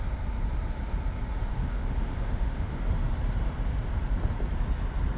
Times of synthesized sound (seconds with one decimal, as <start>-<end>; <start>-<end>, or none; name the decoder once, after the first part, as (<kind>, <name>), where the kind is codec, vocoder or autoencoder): 1.5-2.8 (autoencoder, DAC-VAE)